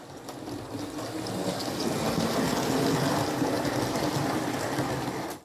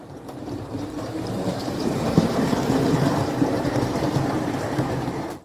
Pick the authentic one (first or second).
first